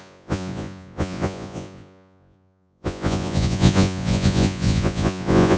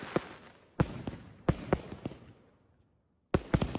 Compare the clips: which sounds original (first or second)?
second